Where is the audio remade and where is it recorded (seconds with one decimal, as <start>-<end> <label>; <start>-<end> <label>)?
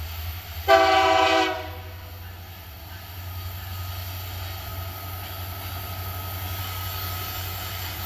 0.0-6.6 recorded; 6.6-8.1 remade